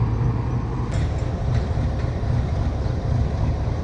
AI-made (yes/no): no